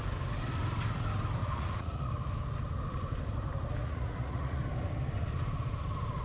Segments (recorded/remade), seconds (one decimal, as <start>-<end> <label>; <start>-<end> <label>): 0.0-1.4 recorded; 1.4-2.1 remade; 2.1-3.8 recorded; 3.8-4.6 remade; 4.6-6.2 recorded